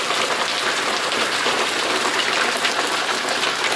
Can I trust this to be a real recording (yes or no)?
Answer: yes